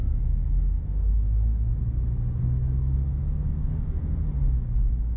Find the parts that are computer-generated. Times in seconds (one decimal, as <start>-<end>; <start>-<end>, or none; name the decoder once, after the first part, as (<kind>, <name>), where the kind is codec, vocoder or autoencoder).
0.0-1.7 (codec, SNAC); 2.4-4.0